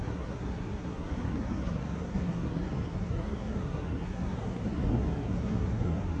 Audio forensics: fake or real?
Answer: fake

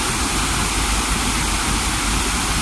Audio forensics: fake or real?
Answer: real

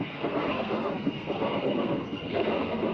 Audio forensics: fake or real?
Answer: fake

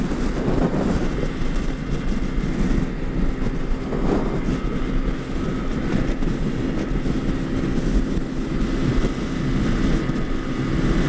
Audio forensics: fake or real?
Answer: real